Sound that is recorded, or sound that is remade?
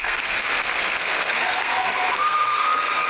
remade